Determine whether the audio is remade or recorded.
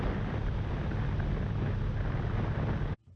recorded